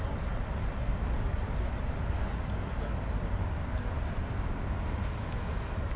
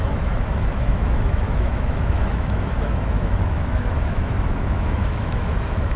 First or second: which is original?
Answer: first